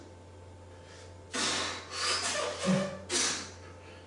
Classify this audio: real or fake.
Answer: real